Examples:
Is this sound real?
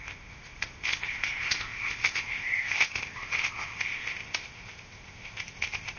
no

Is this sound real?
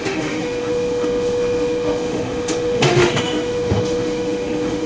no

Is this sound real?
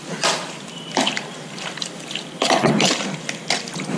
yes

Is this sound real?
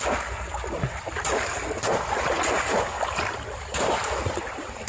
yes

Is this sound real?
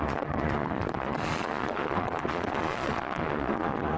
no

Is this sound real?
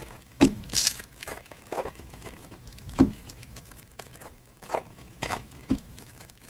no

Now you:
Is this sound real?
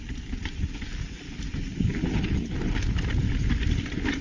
yes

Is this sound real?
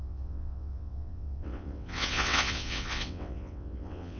no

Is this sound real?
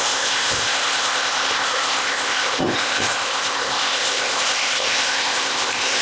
no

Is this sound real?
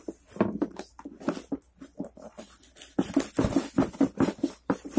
yes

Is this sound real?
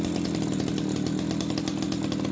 yes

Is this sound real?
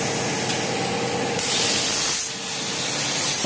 yes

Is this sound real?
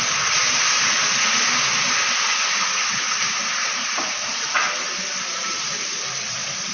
yes